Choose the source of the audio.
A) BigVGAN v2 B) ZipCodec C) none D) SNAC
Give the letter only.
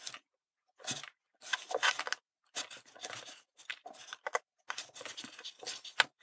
C